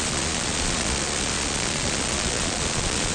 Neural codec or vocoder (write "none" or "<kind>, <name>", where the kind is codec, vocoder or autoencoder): vocoder, Vocos